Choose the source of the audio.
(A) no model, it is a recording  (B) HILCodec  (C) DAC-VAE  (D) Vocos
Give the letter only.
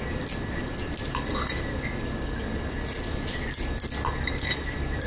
A